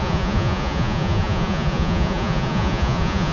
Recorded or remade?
remade